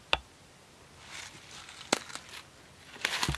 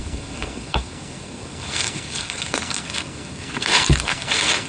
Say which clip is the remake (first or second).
second